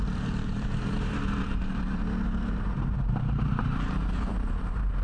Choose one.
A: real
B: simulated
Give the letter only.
B